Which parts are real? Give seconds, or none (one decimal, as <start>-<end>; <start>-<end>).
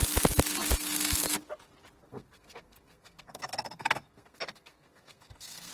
0.0-2.0